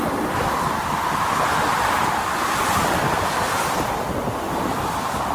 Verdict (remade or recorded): recorded